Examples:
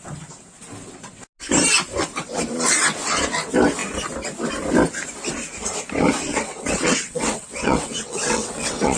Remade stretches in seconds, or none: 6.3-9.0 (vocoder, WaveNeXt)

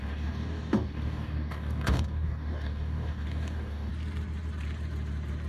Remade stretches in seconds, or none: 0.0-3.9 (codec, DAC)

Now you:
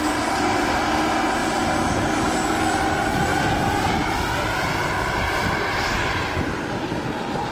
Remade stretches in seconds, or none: 1.4-2.6 (vocoder, BigVGAN v2); 3.3-4.1

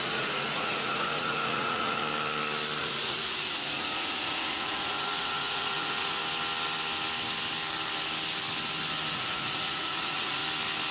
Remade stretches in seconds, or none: 0.0-2.0 (vocoder, Vocos); 2.8-6.2; 9.1-10.4